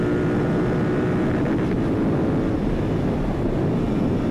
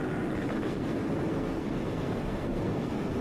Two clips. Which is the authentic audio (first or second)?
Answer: first